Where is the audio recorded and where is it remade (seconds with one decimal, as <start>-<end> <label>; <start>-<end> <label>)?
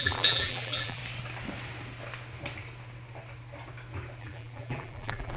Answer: 0.0-1.0 remade; 1.0-4.2 recorded; 4.2-5.4 remade